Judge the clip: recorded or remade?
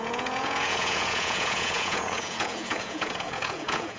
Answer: remade